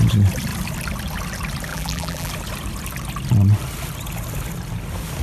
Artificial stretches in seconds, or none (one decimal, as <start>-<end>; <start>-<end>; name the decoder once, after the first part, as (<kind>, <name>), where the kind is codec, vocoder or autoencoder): 1.7-2.3 (vocoder, BigVGAN v2)